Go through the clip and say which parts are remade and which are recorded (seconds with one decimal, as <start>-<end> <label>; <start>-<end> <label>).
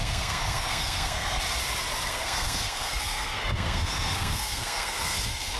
0.0-1.4 remade; 1.4-2.1 recorded; 2.1-5.6 remade